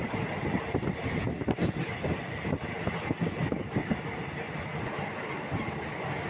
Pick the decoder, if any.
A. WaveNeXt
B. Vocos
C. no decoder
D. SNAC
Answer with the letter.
C